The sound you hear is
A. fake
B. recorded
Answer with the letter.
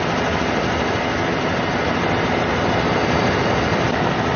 B